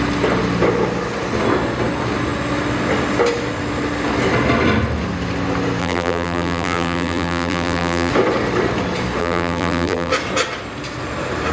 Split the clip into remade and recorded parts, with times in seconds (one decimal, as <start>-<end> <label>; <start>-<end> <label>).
0.0-5.8 recorded; 5.8-8.1 remade; 8.1-9.2 recorded; 9.2-10.1 remade; 10.1-11.5 recorded